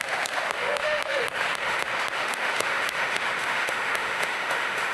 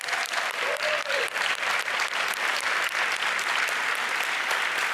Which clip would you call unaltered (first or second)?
second